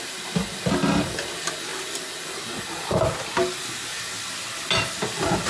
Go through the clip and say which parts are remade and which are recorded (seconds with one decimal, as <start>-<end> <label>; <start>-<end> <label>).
0.0-5.5 recorded